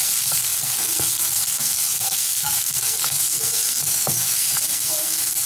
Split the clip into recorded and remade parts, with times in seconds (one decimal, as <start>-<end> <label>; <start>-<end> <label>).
0.0-5.5 remade